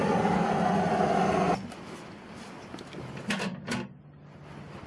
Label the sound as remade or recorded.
recorded